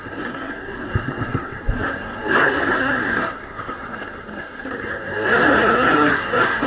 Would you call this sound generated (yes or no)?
yes